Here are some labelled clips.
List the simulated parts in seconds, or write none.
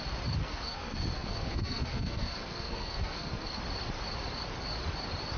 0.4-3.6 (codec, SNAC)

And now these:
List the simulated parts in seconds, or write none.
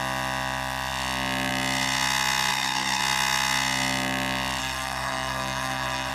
2.5-3.0 (codec, SNAC); 4.6-6.1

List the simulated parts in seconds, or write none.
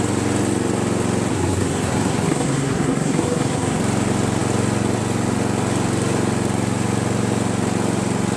1.3-3.8 (codec, SNAC)